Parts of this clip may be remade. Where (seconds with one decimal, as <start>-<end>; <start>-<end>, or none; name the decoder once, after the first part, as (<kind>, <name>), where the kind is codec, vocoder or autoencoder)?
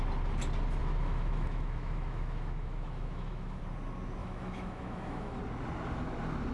0.8-3.6 (autoencoder, DAC-VAE); 4.2-5.4